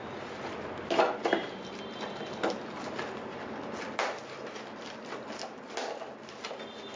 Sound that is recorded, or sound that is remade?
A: recorded